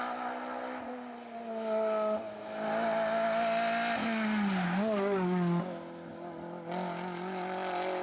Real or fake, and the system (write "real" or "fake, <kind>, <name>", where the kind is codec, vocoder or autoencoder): real